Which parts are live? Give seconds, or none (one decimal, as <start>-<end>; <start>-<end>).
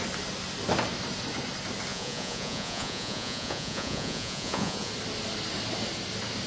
0.0-1.9; 4.9-6.5